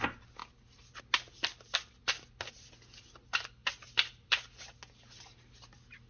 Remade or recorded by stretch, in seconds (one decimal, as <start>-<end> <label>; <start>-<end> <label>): 0.0-6.1 recorded